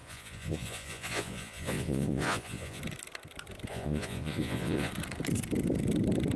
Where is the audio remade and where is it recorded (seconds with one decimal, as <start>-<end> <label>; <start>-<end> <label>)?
0.0-2.8 remade; 2.8-3.7 recorded; 3.7-4.9 remade; 4.9-6.4 recorded